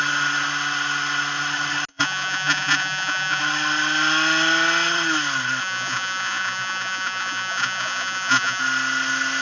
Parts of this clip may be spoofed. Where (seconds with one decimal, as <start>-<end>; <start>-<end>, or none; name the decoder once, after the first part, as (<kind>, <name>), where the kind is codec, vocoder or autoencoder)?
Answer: 1.9-3.4 (vocoder, Vocos); 5.6-8.6